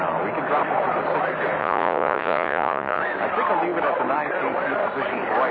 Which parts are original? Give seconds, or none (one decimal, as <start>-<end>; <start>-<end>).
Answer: 0.0-1.6; 3.0-5.5